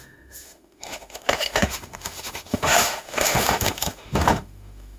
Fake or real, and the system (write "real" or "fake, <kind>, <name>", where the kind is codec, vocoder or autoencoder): fake, autoencoder, DAC-VAE